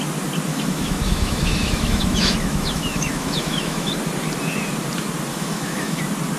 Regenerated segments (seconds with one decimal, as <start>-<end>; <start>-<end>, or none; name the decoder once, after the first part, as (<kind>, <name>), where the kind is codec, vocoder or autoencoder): 0.5-3.9 (autoencoder, DAC-VAE); 5.3-6.0